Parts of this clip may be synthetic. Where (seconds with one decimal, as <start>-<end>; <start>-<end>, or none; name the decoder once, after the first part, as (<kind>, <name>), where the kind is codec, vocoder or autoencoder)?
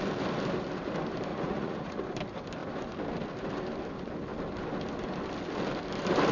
1.3-2.0 (vocoder, Vocos)